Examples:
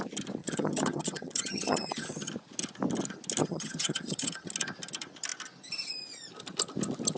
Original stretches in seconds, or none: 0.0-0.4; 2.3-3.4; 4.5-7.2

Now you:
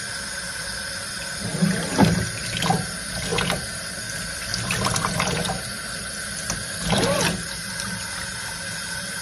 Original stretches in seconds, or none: 0.0-3.3; 4.0-4.5; 7.2-9.2